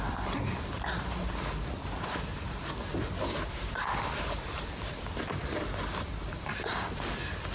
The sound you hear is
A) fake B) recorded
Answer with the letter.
B